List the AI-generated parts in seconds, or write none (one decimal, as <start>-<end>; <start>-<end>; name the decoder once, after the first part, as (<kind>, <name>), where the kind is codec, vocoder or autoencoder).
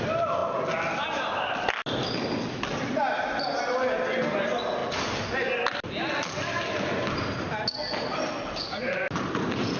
none